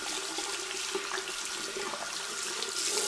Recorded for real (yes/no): yes